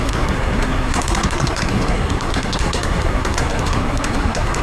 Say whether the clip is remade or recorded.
remade